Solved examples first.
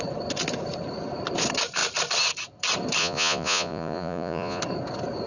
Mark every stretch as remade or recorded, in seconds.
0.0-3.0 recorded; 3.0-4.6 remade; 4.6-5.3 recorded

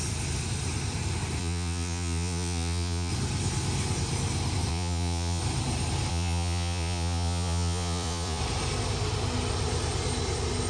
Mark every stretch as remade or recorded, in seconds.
0.0-1.4 recorded; 1.4-3.1 remade; 3.1-4.7 recorded; 4.7-5.4 remade; 5.4-6.1 recorded; 6.1-8.4 remade; 8.4-10.7 recorded

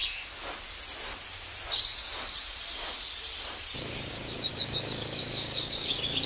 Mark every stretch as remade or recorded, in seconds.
0.0-3.8 recorded; 3.8-6.3 remade

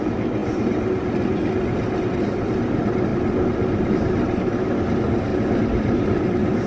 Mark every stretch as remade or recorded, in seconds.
0.0-6.7 recorded